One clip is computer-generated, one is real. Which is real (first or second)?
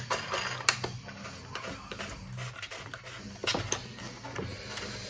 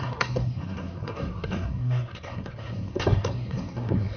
first